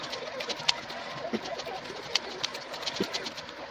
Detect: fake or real real